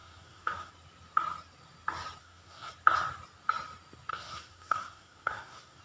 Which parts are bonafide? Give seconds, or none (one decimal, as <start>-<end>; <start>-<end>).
0.7-2.2; 2.7-4.1